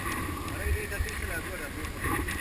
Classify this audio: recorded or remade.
recorded